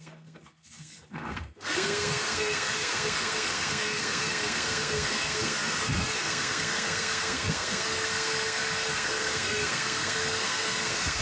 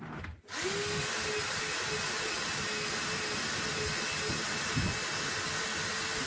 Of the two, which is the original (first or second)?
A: second